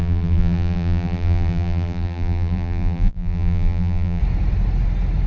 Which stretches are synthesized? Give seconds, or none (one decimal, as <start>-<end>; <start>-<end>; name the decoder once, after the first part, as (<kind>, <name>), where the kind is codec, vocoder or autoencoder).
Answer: 0.0-4.2 (vocoder, BigVGAN v2)